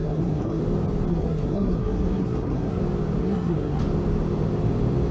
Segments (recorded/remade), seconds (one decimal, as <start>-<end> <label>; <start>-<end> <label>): 0.0-0.6 remade; 0.6-1.1 recorded; 1.1-2.8 remade; 2.8-3.2 recorded; 3.2-3.8 remade; 3.8-5.1 recorded